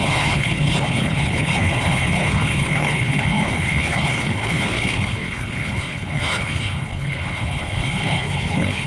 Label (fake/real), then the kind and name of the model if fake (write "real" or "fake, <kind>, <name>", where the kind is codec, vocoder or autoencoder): fake, codec, HILCodec